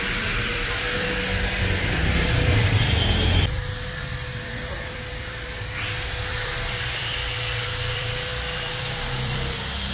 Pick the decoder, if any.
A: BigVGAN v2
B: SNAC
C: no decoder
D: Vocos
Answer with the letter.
A